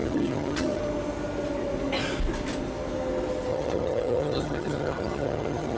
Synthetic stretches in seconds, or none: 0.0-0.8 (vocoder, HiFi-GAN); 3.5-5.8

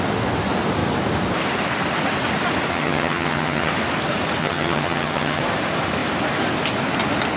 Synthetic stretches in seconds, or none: 2.7-3.7 (vocoder, HiFi-GAN); 4.4-5.4

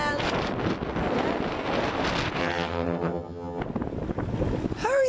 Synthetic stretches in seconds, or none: 2.4-3.6 (vocoder, HiFi-GAN)

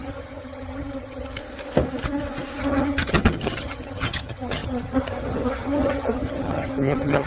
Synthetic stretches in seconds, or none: 0.0-1.4 (vocoder, HiFi-GAN); 2.6-7.3

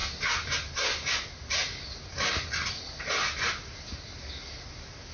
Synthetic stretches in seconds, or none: none

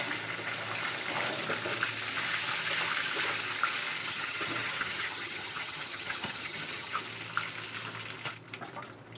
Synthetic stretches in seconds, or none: 4.0-7.0 (vocoder, HiFi-GAN)

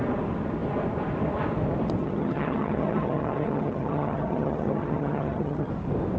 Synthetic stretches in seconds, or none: 2.0-5.7 (vocoder, HiFi-GAN)

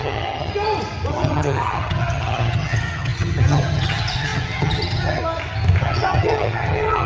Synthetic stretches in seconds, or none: 0.0-0.5 (vocoder, HiFi-GAN); 1.1-5.2; 5.8-7.1